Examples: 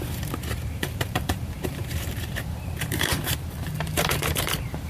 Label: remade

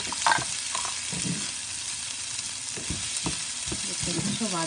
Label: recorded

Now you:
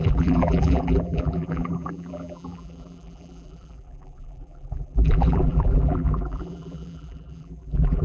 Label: remade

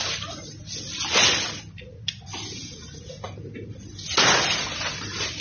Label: recorded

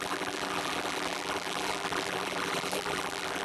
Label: remade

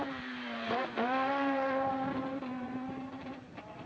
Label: remade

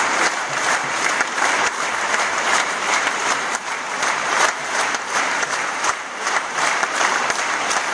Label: remade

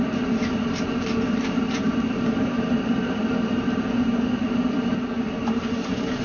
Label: remade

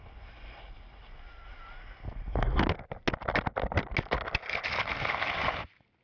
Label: recorded